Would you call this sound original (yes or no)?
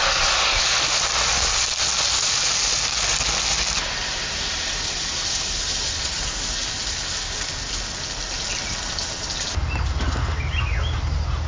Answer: yes